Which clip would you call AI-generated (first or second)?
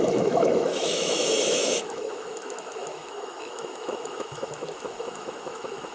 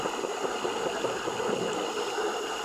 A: first